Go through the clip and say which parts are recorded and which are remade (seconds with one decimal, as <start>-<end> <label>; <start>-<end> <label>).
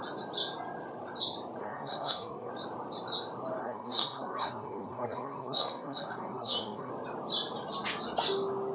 0.0-1.6 recorded; 1.6-2.5 remade; 2.5-3.6 recorded; 3.6-6.9 remade; 6.9-8.7 recorded